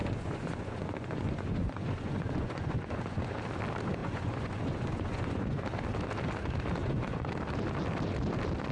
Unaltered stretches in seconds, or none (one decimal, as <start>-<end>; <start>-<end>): 3.3-4.0; 5.6-6.8; 7.3-8.7